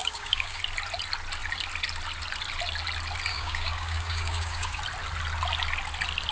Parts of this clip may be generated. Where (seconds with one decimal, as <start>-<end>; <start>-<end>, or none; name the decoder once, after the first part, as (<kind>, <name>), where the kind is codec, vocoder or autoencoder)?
0.0-0.6 (codec, DAC); 3.3-4.8